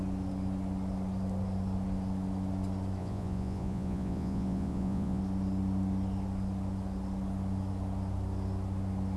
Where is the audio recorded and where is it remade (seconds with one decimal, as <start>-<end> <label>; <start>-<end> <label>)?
0.0-3.0 recorded; 3.0-5.2 remade; 5.2-9.2 recorded